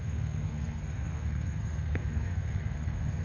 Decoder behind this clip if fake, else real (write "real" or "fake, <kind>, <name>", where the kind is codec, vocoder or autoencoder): fake, codec, SNAC